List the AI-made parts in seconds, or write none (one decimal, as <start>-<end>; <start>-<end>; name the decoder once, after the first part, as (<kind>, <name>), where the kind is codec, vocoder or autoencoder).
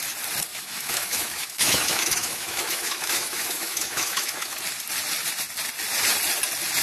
0.5-4.6 (autoencoder, DAC-VAE)